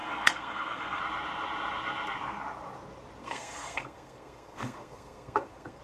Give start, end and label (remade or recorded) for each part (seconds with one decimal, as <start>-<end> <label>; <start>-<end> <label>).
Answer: 0.0-1.0 remade; 1.0-3.2 recorded; 3.2-5.8 remade